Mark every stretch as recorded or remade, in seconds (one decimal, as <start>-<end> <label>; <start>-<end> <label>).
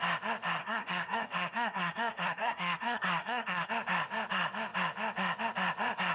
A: 0.0-0.6 recorded; 0.6-3.7 remade; 3.7-6.1 recorded